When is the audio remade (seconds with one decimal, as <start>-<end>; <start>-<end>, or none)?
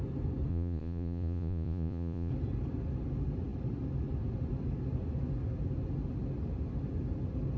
0.5-2.3